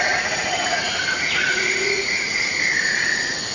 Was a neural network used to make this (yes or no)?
yes